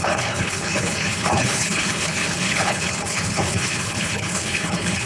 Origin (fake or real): fake